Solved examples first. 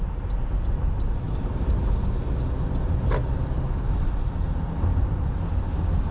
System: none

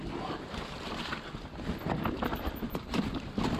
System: none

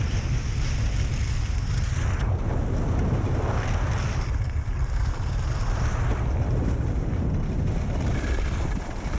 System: none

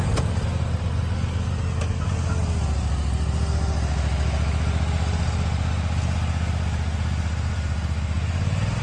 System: none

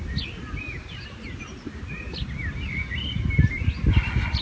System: none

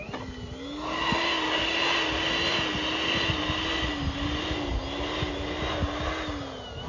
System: none